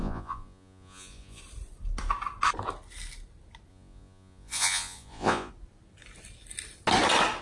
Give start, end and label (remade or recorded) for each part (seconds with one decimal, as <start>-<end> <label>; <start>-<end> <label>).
0.0-1.4 remade; 1.4-3.7 recorded; 3.7-5.5 remade; 5.5-7.4 recorded